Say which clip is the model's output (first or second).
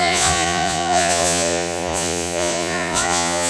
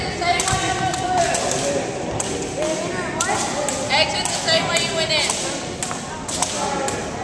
first